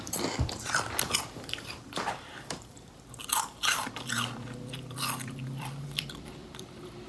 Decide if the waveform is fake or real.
fake